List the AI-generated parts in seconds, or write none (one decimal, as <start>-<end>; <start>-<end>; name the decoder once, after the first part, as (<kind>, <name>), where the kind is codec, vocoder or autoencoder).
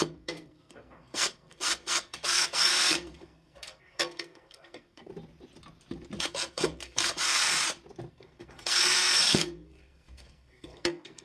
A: 0.0-5.1 (codec, SNAC); 6.2-7.5; 8.1-11.2